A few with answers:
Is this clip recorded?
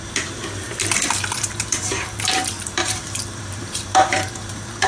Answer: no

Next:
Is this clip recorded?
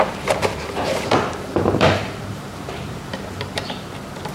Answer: no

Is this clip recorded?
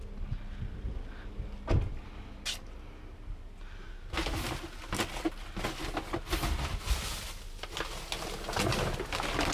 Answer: yes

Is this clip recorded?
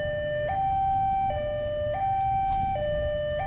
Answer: yes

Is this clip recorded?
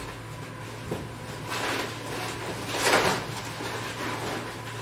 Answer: yes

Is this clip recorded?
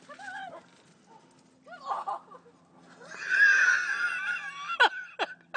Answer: yes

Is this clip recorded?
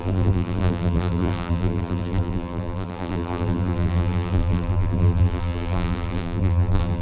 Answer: no